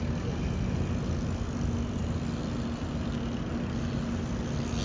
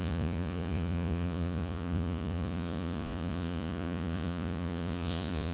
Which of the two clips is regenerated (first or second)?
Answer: second